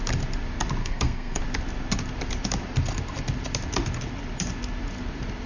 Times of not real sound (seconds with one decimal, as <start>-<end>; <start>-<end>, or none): 0.8-1.4

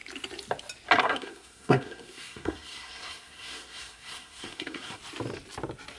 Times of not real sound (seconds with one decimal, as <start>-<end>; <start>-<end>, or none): 1.0-5.0

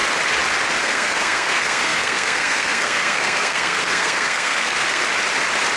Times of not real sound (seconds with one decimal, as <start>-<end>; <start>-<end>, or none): 0.8-5.0

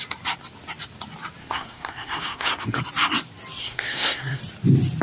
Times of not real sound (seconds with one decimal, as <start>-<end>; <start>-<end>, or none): 1.4-2.8; 3.6-4.4